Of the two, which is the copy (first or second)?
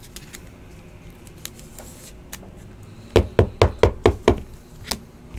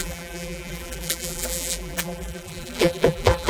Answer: second